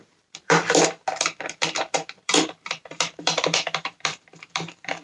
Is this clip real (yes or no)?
no